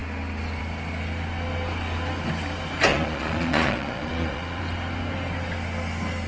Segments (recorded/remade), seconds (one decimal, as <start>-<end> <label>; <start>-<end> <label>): 0.0-2.9 recorded; 2.9-4.6 remade; 4.6-6.3 recorded